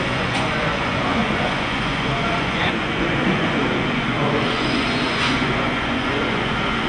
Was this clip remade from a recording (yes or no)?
yes